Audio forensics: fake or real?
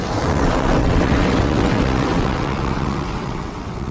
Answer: fake